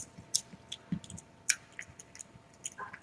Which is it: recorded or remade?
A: recorded